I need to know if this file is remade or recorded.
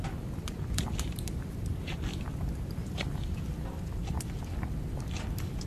recorded